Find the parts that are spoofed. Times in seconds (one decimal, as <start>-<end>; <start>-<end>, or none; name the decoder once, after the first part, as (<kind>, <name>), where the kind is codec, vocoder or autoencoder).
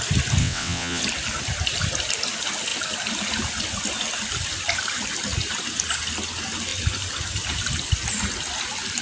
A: 0.4-1.0 (vocoder, WaveNeXt)